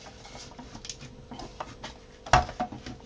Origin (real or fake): real